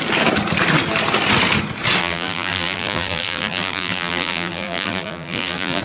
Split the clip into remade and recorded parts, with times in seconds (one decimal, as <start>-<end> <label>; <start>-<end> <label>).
0.0-2.0 recorded; 2.0-5.8 remade